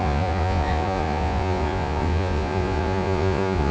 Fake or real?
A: fake